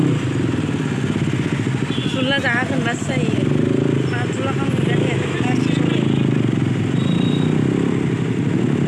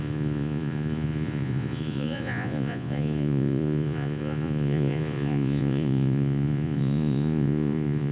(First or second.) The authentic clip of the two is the first